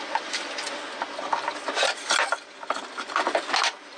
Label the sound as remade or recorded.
recorded